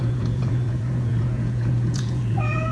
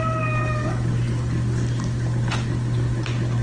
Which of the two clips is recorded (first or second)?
second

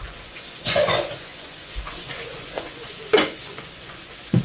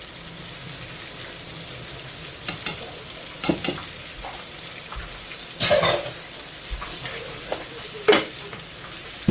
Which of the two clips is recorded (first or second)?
second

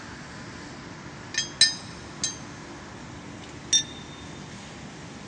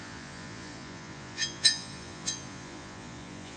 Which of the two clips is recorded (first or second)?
first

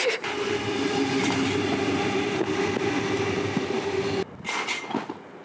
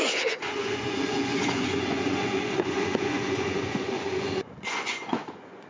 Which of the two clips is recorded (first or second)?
first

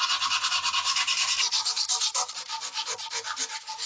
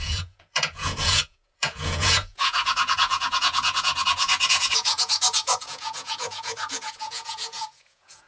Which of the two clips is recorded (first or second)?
first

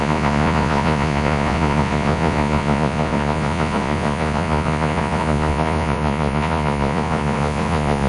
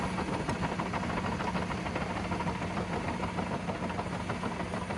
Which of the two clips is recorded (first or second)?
second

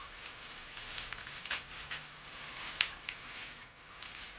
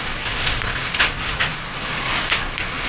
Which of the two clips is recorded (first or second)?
first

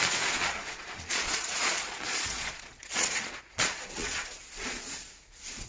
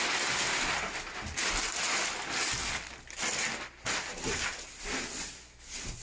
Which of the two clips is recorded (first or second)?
second